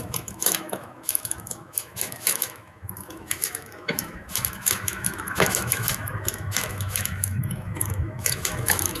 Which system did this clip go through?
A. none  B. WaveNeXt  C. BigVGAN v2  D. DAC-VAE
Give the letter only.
D